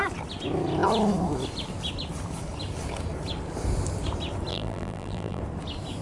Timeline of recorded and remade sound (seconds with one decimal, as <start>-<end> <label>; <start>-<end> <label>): 0.0-4.5 recorded; 4.5-5.4 remade; 5.4-6.0 recorded